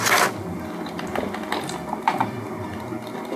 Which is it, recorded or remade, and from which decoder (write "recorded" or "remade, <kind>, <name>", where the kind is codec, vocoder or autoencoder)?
recorded